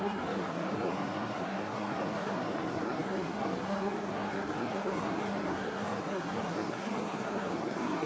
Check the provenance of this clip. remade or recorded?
remade